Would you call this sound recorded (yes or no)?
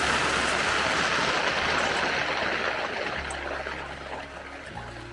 yes